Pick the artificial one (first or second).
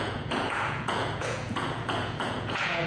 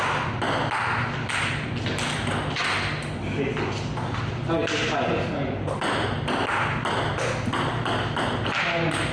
first